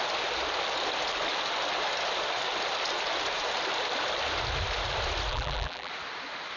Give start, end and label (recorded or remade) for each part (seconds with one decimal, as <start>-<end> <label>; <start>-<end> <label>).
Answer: 0.0-5.3 recorded; 5.3-5.9 remade; 5.9-6.6 recorded